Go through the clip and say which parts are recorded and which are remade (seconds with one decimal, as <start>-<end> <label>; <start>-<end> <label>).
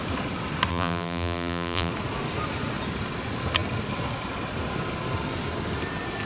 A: 0.0-0.7 recorded; 0.7-1.9 remade; 1.9-6.3 recorded